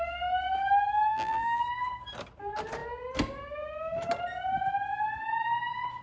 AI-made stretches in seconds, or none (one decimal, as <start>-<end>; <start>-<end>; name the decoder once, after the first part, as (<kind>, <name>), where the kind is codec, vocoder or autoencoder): 1.1-1.6 (vocoder, BigVGAN v2)